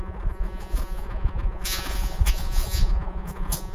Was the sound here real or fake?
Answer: fake